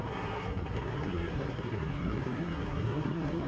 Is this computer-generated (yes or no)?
yes